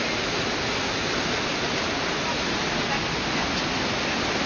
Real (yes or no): yes